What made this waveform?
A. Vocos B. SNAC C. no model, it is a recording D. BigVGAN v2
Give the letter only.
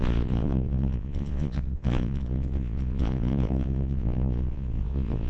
A